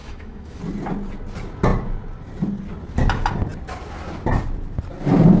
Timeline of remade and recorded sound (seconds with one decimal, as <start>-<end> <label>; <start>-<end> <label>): 0.0-0.6 remade; 0.6-5.4 recorded